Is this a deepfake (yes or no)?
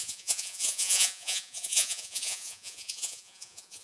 yes